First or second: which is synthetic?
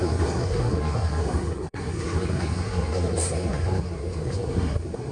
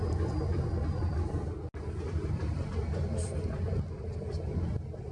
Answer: first